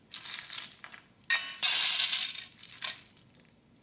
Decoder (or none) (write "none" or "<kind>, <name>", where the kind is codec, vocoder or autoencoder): none